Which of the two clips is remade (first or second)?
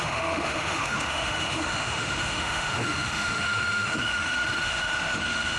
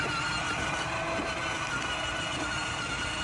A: first